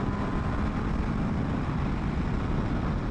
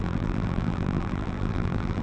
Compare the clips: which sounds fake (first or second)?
second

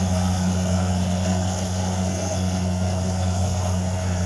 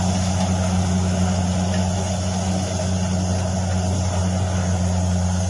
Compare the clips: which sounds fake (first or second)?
first